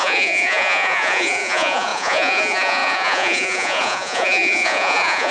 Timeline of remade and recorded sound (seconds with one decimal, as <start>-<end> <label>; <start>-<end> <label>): 0.0-5.3 remade